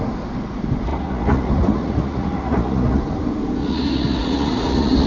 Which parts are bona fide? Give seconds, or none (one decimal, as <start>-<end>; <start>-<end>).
0.0-0.9; 3.0-3.6